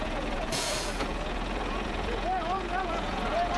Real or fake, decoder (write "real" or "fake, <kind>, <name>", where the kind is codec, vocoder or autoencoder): fake, vocoder, Vocos